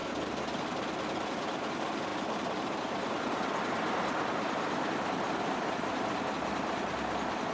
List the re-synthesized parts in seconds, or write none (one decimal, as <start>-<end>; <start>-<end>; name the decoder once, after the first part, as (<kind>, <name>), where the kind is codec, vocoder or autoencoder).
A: 0.6-7.5 (vocoder, BigVGAN v2)